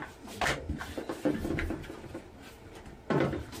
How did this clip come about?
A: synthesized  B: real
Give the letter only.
B